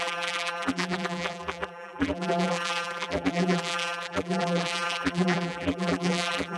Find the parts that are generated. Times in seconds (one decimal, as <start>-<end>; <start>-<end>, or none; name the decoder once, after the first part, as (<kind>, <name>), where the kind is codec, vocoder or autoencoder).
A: 0.0-6.6 (vocoder, BigVGAN v2)